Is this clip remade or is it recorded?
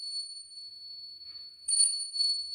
remade